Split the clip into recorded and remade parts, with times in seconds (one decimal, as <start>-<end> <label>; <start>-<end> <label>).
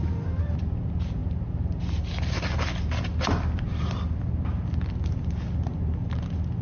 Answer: 0.0-6.6 recorded